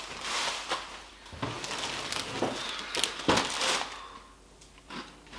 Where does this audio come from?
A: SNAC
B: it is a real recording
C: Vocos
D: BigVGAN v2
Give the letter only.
B